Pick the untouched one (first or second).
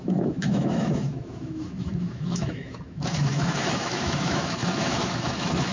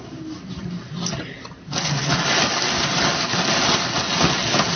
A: second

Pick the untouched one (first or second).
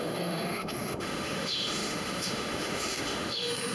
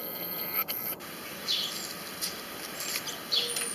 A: second